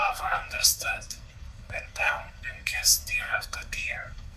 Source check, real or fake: fake